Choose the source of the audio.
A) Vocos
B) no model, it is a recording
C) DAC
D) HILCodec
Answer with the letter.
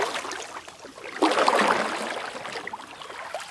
B